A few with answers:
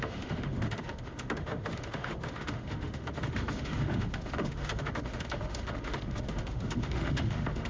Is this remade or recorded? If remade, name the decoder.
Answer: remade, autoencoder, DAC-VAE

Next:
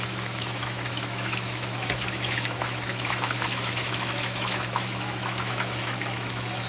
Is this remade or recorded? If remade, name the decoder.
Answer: remade, autoencoder, DAC-VAE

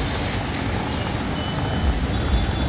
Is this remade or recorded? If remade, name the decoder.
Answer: recorded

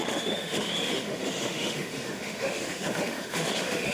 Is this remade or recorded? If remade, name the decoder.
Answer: remade, autoencoder, DAC-VAE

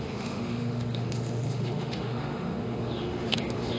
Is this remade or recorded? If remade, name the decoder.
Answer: remade, autoencoder, DAC-VAE